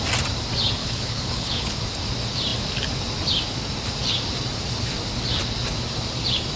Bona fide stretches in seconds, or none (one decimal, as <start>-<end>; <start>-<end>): 0.0-0.8; 1.7-6.6